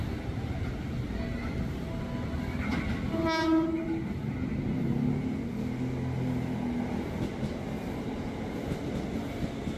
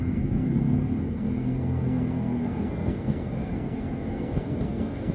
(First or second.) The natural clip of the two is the first